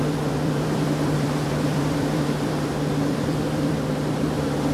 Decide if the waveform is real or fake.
fake